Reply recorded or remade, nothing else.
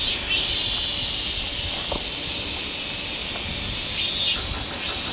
recorded